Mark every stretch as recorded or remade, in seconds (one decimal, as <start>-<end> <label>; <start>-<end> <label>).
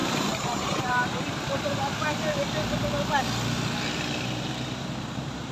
0.0-1.9 remade; 1.9-4.5 recorded; 4.5-5.5 remade